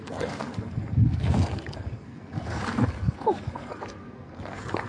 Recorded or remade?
remade